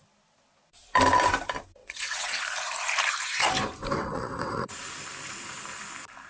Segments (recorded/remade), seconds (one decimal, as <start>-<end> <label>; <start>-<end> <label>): 0.0-1.8 recorded; 1.8-2.4 remade; 2.4-4.0 recorded; 4.0-4.7 remade; 4.7-6.3 recorded